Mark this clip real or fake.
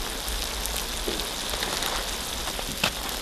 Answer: real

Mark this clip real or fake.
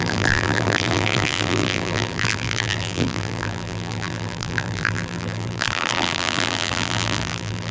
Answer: fake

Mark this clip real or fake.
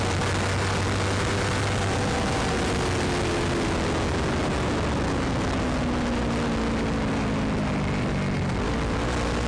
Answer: real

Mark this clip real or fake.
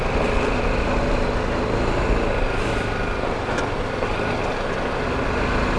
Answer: real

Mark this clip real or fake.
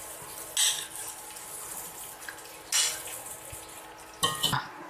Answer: real